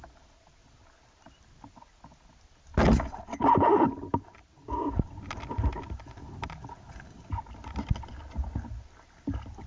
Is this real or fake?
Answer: real